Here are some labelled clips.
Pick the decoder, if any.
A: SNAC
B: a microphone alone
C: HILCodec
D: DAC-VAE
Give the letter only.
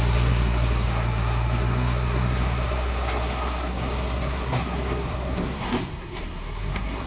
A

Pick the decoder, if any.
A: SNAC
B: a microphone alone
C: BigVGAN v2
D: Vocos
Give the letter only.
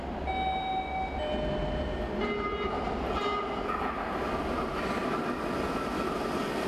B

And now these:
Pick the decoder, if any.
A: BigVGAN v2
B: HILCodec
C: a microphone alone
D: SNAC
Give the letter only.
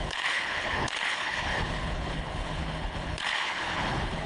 B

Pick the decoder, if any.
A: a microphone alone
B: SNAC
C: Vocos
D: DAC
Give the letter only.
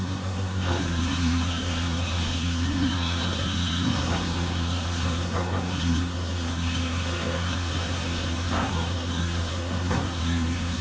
B